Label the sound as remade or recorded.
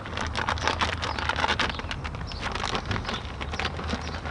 recorded